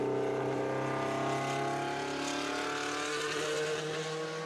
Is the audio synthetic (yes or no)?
no